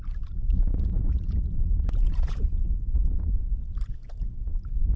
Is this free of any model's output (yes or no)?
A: no